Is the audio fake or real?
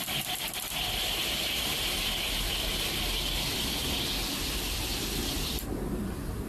fake